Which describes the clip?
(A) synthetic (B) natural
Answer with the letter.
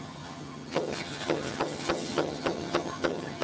A